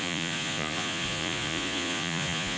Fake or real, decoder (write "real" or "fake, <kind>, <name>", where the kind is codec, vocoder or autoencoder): fake, vocoder, Vocos